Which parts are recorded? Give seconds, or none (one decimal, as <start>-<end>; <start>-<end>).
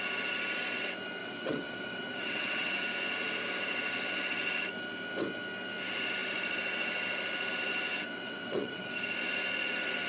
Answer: 0.0-1.2; 2.8-7.9; 8.9-10.1